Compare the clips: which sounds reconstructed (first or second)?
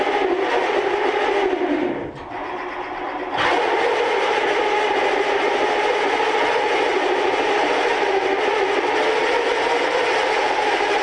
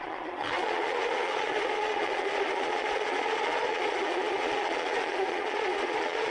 second